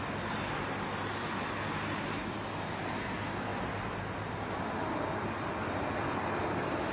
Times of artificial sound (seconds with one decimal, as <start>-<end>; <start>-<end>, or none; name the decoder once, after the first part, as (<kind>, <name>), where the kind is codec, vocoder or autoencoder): none